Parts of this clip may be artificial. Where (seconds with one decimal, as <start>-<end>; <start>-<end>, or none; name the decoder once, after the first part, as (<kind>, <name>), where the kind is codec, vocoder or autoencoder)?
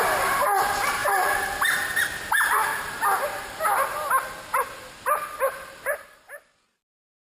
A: none